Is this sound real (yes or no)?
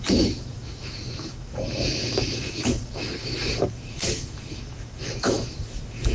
no